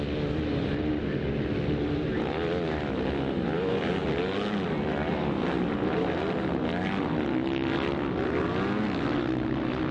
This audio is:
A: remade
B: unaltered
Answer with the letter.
B